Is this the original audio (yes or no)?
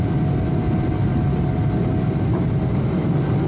yes